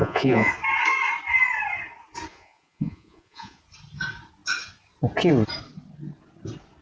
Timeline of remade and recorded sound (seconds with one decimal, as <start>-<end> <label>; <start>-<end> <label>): 0.0-0.5 remade; 0.5-2.3 recorded; 2.3-3.6 remade; 3.6-6.8 recorded